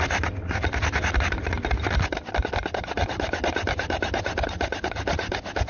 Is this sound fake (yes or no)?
no